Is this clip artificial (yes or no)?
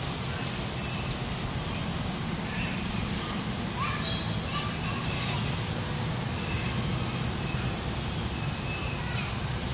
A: no